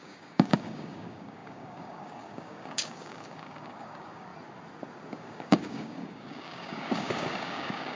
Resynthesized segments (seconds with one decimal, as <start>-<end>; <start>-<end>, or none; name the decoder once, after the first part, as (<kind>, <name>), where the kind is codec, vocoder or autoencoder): 0.0-4.3 (codec, DAC); 5.1-8.0